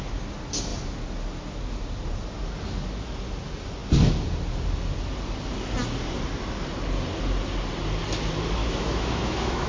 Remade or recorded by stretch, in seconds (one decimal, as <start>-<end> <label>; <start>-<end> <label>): 0.0-8.6 recorded; 8.6-9.7 remade